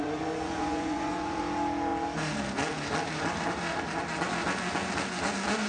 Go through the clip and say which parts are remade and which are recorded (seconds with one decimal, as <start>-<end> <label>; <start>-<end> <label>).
0.0-1.4 remade; 1.4-5.7 recorded